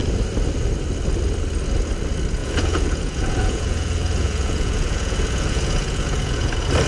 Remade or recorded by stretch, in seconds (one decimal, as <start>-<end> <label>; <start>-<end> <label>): 0.0-2.4 recorded; 2.4-6.5 remade; 6.5-6.9 recorded